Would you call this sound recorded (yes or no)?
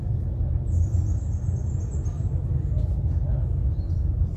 yes